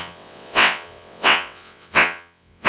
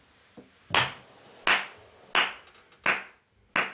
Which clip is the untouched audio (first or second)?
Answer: second